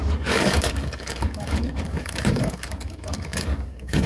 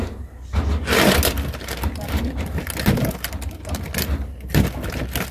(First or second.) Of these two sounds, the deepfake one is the first